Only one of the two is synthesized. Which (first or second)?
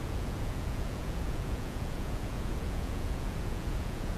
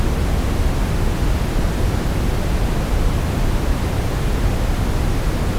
first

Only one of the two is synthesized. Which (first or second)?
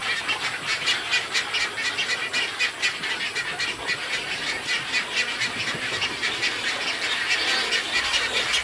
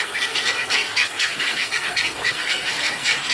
second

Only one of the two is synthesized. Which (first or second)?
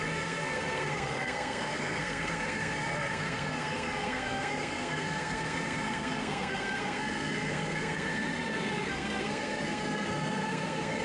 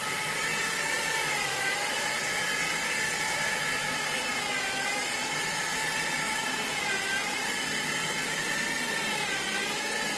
first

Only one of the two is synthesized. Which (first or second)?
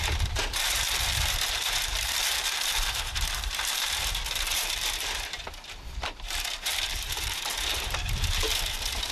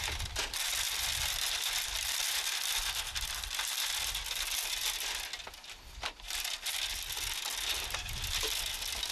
first